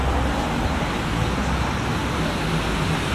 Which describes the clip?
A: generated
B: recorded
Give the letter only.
B